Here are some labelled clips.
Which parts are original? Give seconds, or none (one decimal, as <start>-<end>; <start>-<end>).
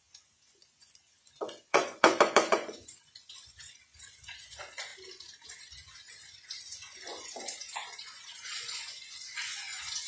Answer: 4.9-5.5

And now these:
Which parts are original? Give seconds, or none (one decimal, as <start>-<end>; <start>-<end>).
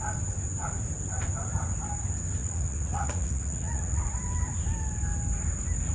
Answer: 0.0-2.4; 4.0-5.9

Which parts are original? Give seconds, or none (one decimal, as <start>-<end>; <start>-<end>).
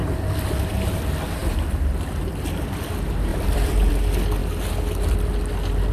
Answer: 0.0-1.4; 2.1-3.3; 3.9-5.9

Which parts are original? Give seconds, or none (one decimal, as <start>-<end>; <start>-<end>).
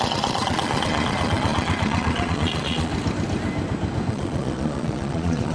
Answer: 2.9-4.1